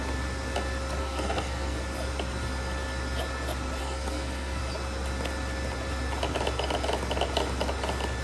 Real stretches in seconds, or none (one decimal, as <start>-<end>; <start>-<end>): 0.0-1.0; 1.8-3.8; 4.6-8.2